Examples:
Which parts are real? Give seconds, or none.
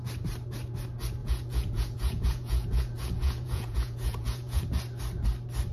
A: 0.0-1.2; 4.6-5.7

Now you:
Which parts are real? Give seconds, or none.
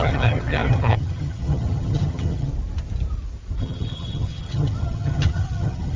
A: 2.5-3.6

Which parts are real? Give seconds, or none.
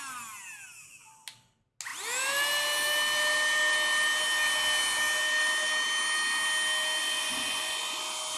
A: 0.0-7.0; 8.0-8.4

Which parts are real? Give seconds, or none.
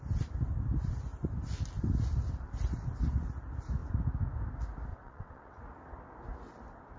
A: 0.0-4.9; 5.6-7.0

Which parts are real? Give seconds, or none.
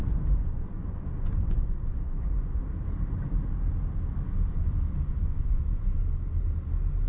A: 2.6-5.1; 6.0-7.1